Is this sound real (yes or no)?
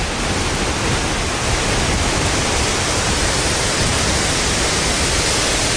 yes